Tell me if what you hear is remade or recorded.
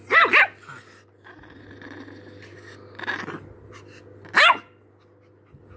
recorded